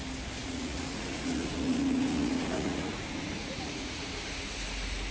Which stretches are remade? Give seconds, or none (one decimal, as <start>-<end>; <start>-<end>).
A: 0.4-3.0; 3.4-4.0